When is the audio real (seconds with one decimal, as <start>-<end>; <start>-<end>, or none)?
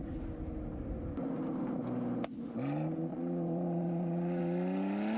0.0-3.1; 4.4-5.2